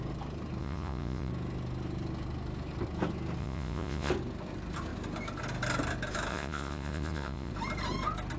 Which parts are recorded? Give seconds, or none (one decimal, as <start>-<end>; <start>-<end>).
0.0-0.6; 1.3-3.4; 4.1-6.3; 7.5-8.4